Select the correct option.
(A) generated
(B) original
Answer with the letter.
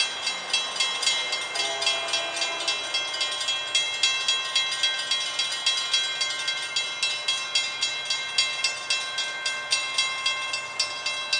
B